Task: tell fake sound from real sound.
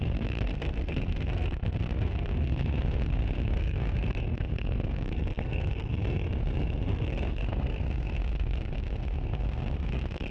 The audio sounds fake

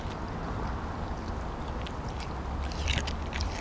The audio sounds real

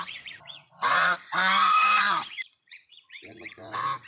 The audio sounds fake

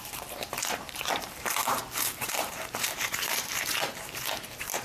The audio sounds fake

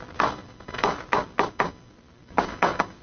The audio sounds real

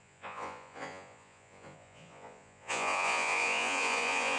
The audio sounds fake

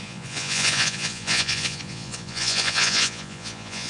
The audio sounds fake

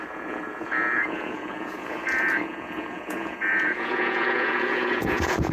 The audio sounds fake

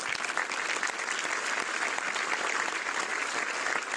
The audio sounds real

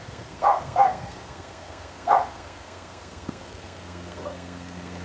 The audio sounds fake